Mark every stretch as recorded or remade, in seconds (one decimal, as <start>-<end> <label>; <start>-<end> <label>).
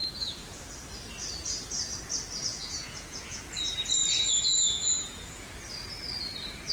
0.0-0.6 remade; 0.6-2.5 recorded; 2.5-3.4 remade; 3.4-4.2 recorded; 4.2-5.5 remade; 5.5-6.7 recorded